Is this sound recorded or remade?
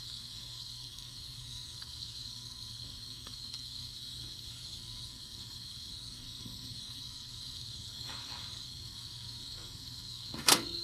remade